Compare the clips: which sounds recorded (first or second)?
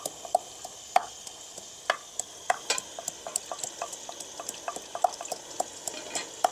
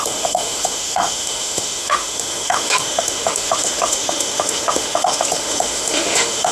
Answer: first